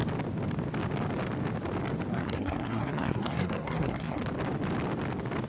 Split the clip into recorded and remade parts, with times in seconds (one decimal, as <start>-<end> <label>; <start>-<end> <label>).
0.0-2.1 recorded; 2.1-4.2 remade; 4.2-5.5 recorded